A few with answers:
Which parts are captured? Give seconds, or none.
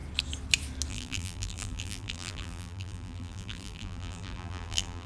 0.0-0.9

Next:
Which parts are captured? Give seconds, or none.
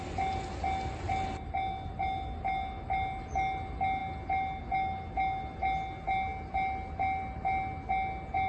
0.0-8.5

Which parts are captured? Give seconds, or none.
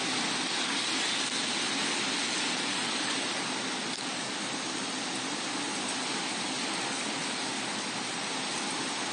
0.0-1.4; 3.4-9.1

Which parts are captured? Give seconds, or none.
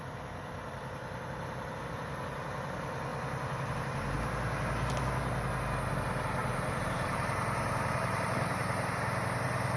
0.0-6.4; 8.3-9.8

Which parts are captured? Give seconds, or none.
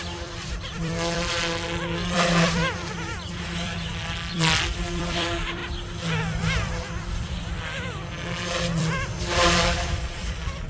5.6-6.2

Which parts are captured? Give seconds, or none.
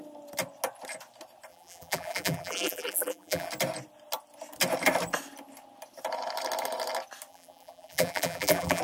0.0-1.5; 3.5-7.3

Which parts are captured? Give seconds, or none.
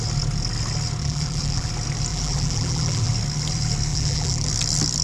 0.0-1.0; 1.7-2.1; 3.1-3.9; 4.5-5.0